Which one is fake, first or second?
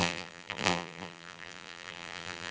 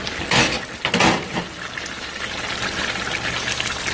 first